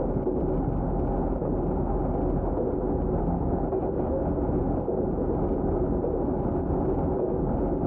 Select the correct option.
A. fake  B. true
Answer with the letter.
B